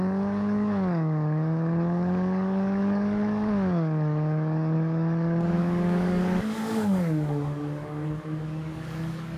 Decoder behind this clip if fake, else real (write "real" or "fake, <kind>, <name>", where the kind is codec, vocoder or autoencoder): fake, codec, DAC